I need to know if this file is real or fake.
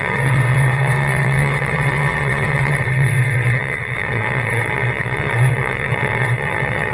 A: fake